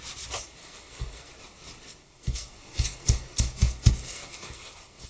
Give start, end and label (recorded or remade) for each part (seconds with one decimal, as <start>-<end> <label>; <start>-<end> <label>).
0.0-0.6 recorded; 0.6-1.3 remade; 1.3-2.0 recorded; 2.0-5.1 remade